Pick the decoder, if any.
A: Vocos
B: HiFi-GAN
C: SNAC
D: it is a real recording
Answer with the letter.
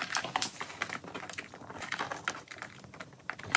D